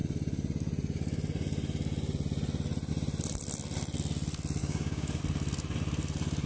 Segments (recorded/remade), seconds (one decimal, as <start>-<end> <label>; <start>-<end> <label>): 0.0-4.6 recorded; 4.6-5.2 remade; 5.2-6.5 recorded